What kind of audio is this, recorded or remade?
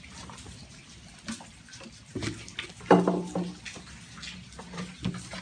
recorded